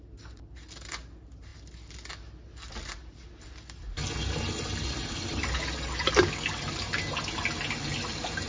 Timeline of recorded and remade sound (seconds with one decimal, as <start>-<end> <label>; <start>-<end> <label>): 0.0-8.5 recorded